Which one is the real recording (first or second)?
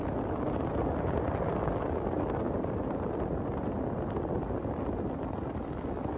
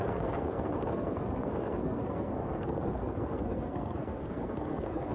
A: first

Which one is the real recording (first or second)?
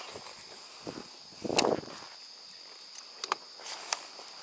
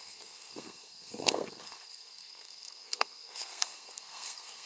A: first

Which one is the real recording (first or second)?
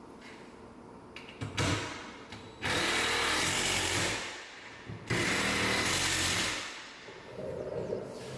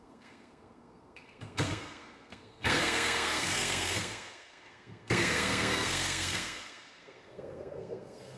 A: first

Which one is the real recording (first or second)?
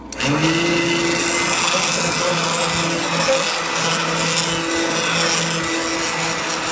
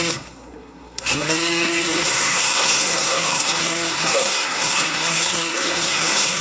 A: first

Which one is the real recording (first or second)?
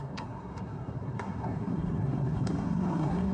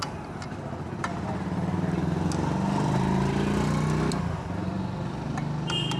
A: second